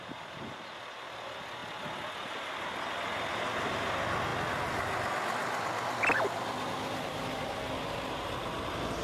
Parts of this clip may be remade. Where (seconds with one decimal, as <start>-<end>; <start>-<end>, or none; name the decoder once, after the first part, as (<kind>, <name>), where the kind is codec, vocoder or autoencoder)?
none